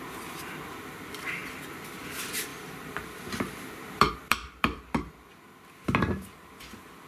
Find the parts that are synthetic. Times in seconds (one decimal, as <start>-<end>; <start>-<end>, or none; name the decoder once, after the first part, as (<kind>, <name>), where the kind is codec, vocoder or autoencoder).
2.5-5.4 (vocoder, BigVGAN v2)